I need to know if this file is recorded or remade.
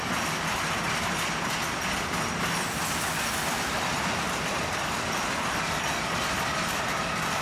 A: recorded